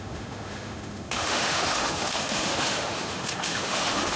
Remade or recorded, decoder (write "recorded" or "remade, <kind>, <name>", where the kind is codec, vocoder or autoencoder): remade, autoencoder, DAC-VAE